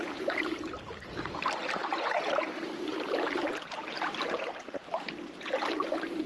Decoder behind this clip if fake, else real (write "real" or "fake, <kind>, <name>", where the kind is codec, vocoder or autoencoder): fake, vocoder, BigVGAN v2